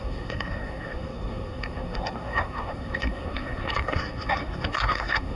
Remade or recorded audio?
remade